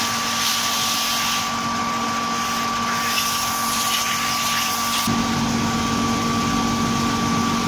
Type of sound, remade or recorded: recorded